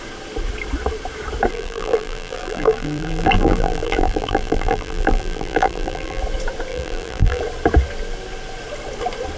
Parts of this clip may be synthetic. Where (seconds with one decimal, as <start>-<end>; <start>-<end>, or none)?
1.5-6.2; 6.7-7.4